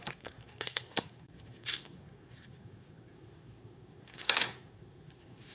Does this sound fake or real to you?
fake